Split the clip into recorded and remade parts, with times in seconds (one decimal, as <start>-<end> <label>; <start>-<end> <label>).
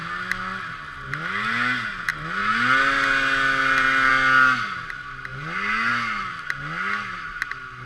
0.0-7.9 recorded